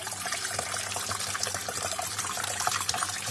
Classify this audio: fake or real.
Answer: fake